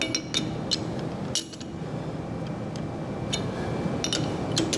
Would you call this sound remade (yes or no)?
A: no